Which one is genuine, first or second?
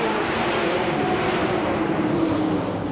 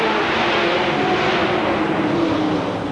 second